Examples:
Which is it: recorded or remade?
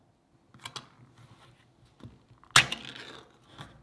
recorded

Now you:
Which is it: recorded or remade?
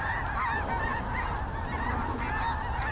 recorded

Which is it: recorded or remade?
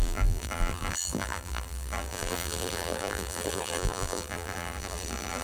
remade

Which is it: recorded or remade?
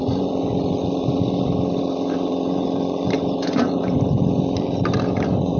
remade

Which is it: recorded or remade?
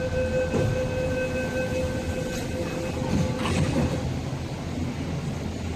recorded